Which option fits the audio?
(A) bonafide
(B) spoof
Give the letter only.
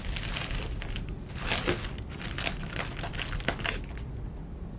A